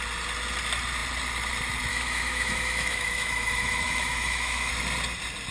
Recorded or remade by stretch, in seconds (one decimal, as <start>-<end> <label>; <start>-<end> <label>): 0.0-1.9 recorded; 1.9-4.7 remade; 4.7-5.5 recorded